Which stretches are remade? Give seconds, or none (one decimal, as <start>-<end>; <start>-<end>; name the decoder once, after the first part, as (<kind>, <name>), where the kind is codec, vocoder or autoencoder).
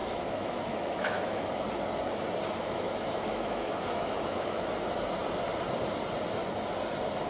0.0-1.5 (autoencoder, DAC-VAE); 2.6-4.7